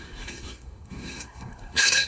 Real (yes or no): no